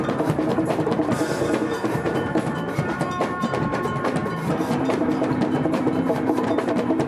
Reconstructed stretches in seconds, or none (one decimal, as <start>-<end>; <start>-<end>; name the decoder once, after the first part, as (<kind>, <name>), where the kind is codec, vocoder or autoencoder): 0.0-7.1 (vocoder, BigVGAN v2)